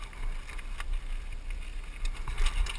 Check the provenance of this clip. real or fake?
real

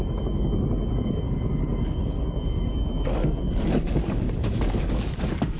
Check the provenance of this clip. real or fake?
fake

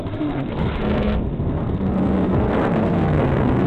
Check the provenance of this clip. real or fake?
fake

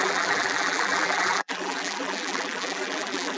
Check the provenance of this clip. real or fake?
fake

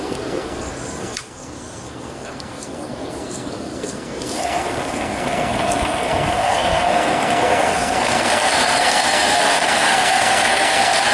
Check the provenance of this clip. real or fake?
fake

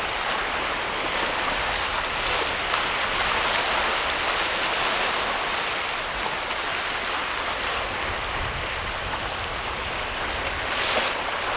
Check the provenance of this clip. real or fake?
real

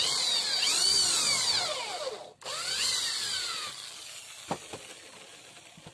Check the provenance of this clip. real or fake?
real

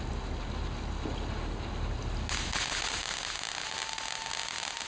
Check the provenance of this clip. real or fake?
real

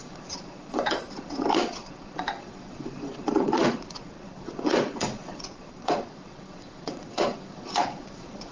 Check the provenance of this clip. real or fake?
fake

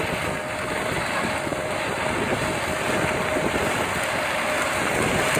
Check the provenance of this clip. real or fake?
real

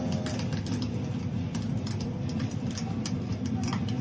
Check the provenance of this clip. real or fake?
real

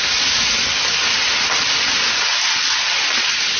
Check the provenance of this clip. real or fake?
real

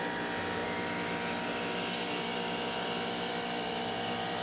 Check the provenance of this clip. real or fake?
real